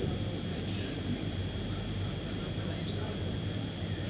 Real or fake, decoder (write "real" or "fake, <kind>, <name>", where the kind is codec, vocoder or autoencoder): fake, vocoder, BigVGAN v2